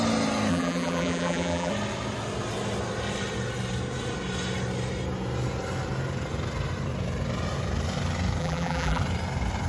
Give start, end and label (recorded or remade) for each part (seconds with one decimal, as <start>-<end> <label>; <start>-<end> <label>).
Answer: 0.0-0.5 recorded; 0.5-1.7 remade; 1.7-8.4 recorded; 8.4-9.0 remade; 9.0-9.7 recorded